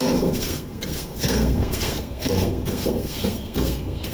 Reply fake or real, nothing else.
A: fake